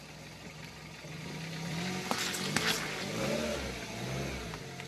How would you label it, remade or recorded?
recorded